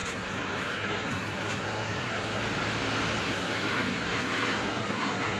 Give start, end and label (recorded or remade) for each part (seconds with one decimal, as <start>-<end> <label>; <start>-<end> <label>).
0.0-2.4 remade; 2.4-3.2 recorded; 3.2-5.4 remade